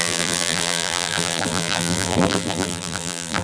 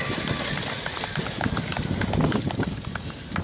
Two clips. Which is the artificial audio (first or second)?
first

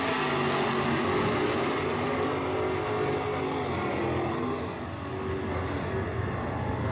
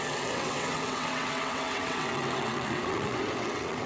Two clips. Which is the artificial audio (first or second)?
second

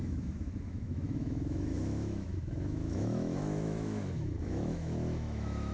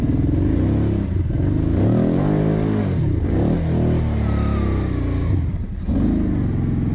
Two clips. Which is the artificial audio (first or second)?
first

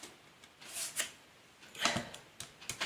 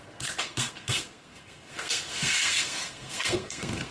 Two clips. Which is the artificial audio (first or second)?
second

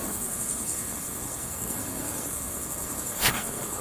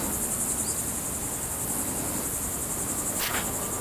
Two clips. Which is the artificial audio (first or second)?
first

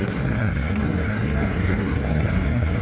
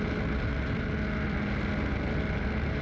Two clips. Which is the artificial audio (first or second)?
first